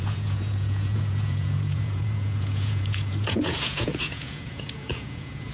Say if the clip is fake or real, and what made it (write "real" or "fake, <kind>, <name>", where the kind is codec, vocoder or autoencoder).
fake, vocoder, Vocos